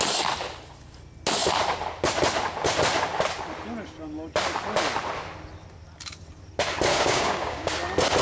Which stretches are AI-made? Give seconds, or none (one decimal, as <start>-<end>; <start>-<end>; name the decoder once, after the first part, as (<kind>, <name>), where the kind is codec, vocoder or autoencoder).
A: 6.9-7.7 (codec, DAC)